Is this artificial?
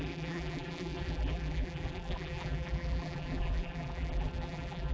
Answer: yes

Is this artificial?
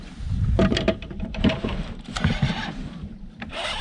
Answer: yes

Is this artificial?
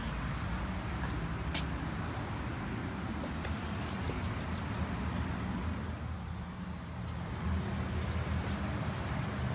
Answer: no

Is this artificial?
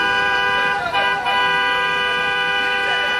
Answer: yes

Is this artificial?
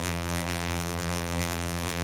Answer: yes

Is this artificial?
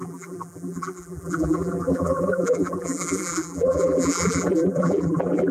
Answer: yes